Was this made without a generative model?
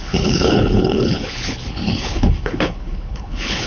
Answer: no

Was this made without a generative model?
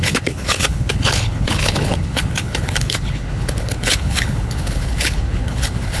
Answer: no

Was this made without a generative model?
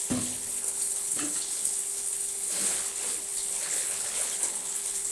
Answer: no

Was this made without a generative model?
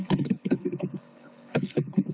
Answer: no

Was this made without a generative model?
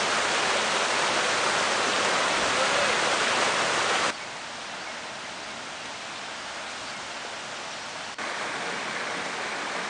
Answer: yes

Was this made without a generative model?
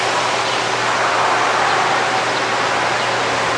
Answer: yes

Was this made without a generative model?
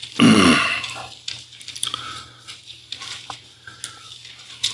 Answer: yes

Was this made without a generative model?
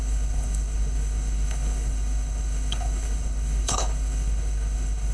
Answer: no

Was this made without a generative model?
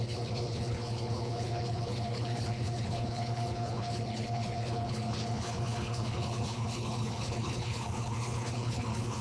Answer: no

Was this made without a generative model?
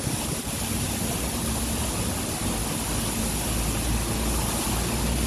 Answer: yes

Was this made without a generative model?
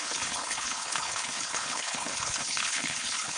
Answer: no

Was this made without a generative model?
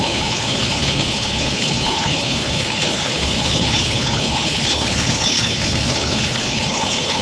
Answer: no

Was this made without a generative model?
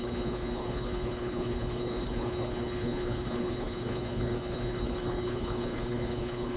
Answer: no